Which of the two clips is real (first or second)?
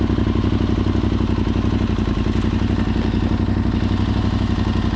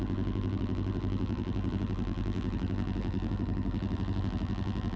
first